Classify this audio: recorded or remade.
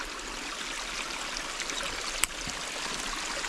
recorded